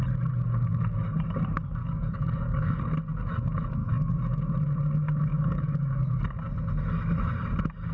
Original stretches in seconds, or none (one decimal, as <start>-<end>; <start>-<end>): 0.0-1.8; 2.8-3.8; 4.4-5.3; 6.0-7.9